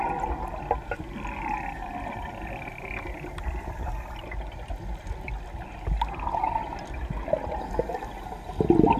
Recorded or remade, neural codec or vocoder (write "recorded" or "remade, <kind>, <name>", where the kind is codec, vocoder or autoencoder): recorded